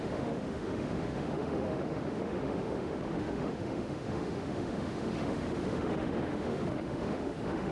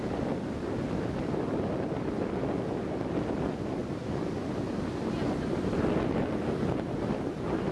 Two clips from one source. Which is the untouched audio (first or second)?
second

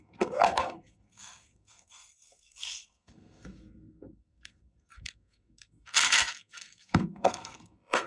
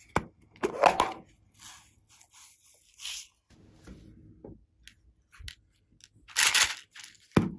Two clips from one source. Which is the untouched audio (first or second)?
second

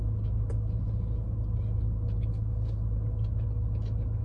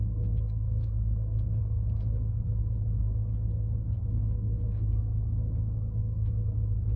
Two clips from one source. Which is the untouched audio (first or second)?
first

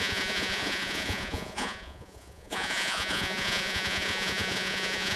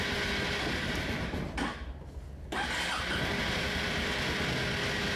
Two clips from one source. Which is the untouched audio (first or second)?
second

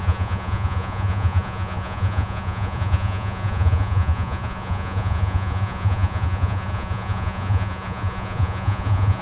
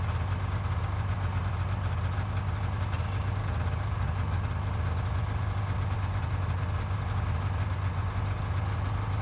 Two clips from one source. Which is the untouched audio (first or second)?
second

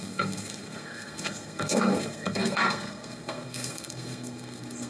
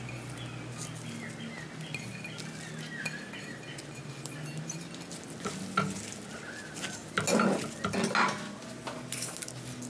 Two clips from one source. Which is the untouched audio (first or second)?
second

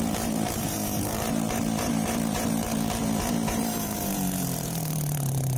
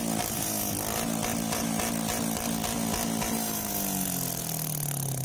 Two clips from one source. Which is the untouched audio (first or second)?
second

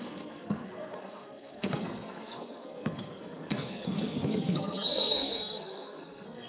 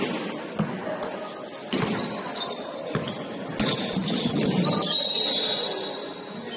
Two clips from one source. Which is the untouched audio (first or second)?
second